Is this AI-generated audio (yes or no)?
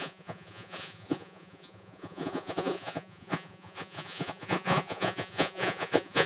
yes